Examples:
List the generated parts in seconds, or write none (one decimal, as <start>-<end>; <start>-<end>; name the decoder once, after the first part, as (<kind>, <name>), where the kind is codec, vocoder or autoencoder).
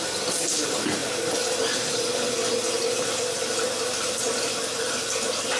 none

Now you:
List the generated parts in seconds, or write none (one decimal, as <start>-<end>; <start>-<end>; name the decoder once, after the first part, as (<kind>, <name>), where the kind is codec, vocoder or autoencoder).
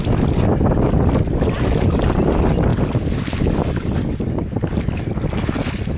none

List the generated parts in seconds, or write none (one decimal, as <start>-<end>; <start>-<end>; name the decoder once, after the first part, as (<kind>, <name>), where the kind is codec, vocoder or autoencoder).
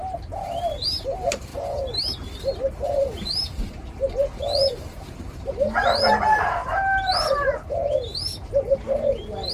0.6-9.5 (vocoder, BigVGAN v2)